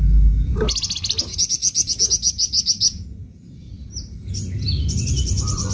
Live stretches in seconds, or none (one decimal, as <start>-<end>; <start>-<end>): 0.0-5.7